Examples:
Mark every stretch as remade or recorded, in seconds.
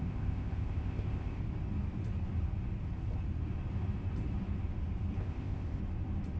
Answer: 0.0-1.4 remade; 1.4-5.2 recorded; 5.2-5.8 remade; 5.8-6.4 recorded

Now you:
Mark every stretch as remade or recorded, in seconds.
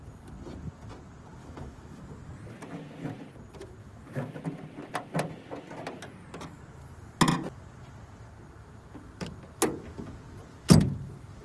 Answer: 0.0-1.4 recorded; 1.4-2.0 remade; 2.0-3.8 recorded; 3.8-4.4 remade; 4.4-11.4 recorded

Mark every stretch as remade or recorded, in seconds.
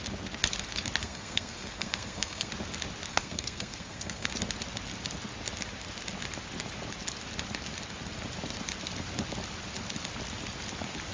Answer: 0.0-1.0 recorded; 1.0-2.5 remade; 2.5-3.1 recorded; 3.1-4.3 remade; 4.3-11.1 recorded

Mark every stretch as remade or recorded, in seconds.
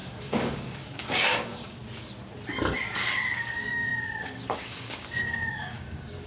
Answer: 0.0-1.8 remade; 1.8-3.1 recorded; 3.1-6.3 remade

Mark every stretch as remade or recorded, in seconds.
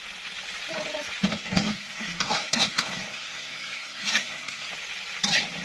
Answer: 0.0-1.3 recorded; 1.3-4.7 remade; 4.7-5.6 recorded